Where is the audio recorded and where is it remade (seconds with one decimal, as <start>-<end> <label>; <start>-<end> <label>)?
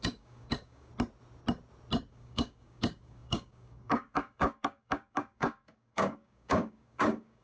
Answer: 0.0-0.9 remade; 0.9-2.1 recorded; 2.1-7.4 remade